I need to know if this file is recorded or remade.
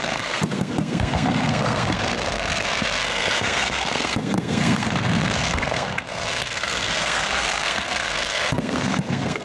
remade